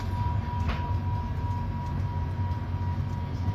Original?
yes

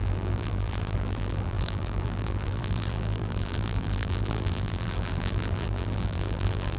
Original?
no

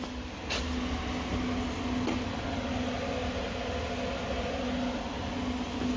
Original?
yes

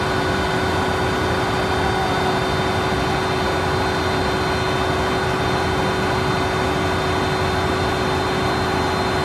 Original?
yes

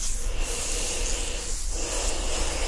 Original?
yes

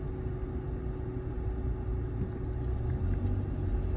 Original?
yes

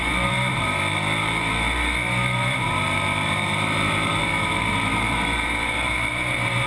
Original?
no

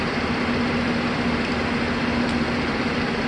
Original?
yes